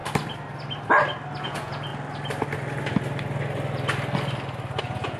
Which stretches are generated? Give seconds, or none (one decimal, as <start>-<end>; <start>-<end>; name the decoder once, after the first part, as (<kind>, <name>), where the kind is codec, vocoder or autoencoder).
1.4-1.9 (vocoder, Vocos); 4.8-5.2